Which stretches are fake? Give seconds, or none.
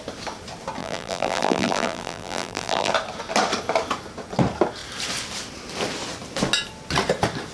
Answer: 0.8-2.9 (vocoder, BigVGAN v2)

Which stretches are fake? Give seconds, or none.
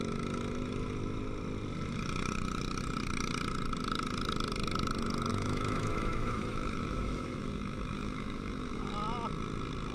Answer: 5.3-8.9 (autoencoder, DAC-VAE)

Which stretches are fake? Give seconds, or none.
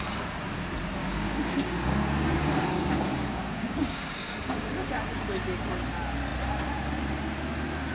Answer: 1.0-4.9 (codec, DAC)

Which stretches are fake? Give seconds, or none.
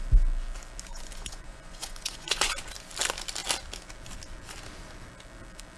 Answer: 0.9-2.7 (vocoder, Vocos)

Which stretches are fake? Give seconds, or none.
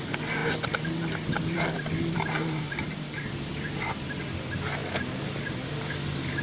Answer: 0.4-4.2 (vocoder, BigVGAN v2)